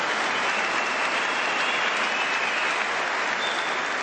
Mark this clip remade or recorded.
recorded